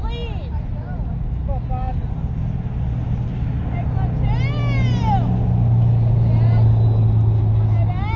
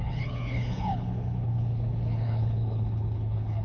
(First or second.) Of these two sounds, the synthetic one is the second